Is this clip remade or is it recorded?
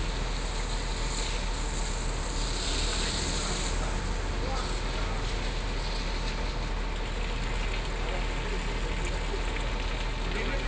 recorded